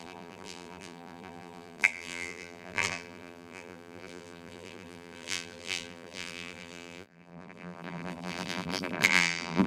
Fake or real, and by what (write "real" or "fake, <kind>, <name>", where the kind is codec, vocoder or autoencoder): fake, vocoder, BigVGAN v2